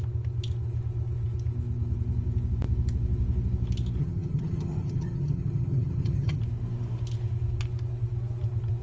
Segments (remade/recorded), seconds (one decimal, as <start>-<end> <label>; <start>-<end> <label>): 0.0-4.0 recorded; 4.0-6.4 remade; 6.4-8.8 recorded